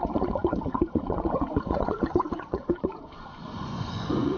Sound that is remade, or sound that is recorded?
remade